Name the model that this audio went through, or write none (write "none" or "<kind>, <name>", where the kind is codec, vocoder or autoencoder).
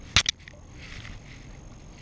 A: none